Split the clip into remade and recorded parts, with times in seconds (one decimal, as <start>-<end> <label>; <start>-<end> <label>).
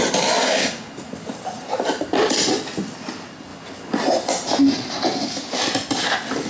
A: 0.0-0.4 recorded; 0.4-0.9 remade; 0.9-6.5 recorded